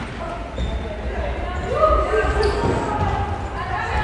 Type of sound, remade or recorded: recorded